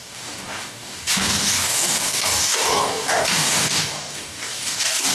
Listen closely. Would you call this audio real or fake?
fake